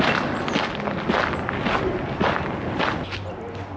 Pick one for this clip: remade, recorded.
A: recorded